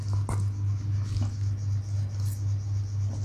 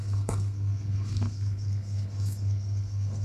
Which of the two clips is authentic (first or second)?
first